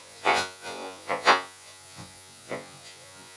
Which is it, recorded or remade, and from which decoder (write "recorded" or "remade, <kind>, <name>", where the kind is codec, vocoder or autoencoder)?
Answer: remade, vocoder, Vocos